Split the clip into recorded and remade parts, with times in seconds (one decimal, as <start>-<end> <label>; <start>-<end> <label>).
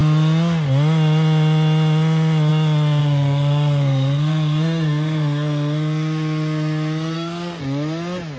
0.0-3.0 recorded; 3.0-7.6 remade; 7.6-8.4 recorded